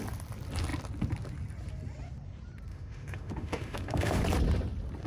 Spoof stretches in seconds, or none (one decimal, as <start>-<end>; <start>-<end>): 2.7-4.2